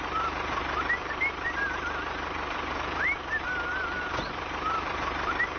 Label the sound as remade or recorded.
remade